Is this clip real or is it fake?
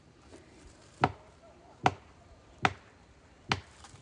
real